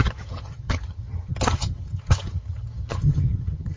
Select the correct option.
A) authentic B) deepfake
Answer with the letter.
B